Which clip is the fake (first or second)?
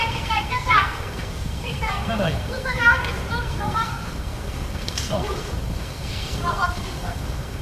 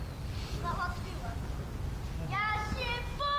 first